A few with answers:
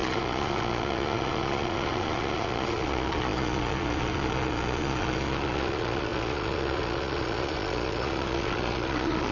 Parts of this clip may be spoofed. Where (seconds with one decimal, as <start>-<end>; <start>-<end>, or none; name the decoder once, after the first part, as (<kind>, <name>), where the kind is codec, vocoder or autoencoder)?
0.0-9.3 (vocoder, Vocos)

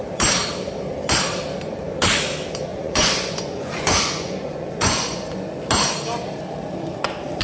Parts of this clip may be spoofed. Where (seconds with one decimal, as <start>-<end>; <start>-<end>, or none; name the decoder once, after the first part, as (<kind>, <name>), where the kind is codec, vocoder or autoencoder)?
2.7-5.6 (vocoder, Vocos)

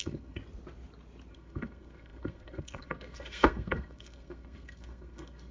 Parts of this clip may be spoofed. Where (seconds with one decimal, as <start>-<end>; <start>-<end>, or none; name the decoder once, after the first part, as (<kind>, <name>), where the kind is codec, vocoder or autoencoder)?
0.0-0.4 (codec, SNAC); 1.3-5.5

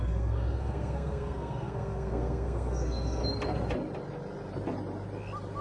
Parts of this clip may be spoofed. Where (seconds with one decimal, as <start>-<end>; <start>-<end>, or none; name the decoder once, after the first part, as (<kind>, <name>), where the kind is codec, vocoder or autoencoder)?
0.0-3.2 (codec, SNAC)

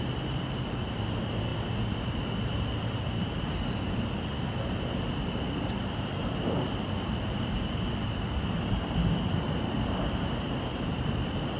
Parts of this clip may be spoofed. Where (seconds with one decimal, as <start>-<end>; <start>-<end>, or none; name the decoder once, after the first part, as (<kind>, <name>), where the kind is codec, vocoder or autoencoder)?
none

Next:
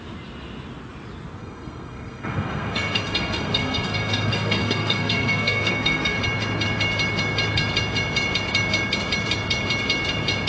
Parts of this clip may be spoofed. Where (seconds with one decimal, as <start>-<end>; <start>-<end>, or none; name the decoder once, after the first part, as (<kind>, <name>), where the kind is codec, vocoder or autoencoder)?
1.4-6.2 (codec, SNAC)